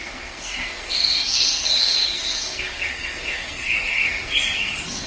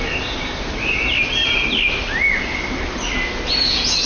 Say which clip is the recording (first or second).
second